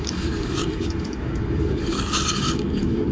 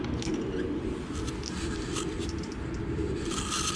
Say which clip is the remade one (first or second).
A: first